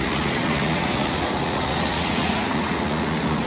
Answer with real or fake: fake